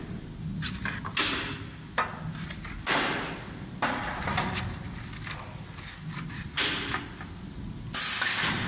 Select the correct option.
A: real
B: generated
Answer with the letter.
A